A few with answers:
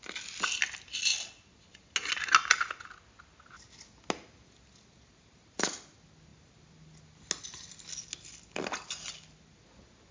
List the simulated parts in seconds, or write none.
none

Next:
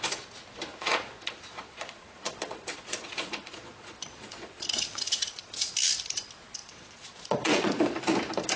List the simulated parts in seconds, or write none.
0.7-5.7 (vocoder, Vocos); 6.6-8.0